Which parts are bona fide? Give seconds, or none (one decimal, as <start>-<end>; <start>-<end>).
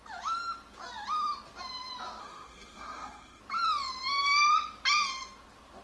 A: 0.0-2.2; 3.4-5.8